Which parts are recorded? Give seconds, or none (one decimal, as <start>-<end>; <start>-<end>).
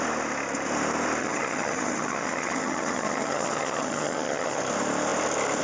0.0-1.2; 4.6-5.6